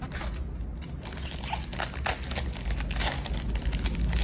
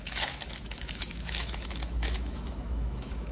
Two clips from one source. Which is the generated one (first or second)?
second